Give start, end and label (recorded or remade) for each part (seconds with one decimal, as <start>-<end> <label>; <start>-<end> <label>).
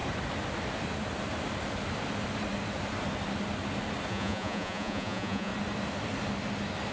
0.0-4.1 recorded; 4.1-5.5 remade; 5.5-6.9 recorded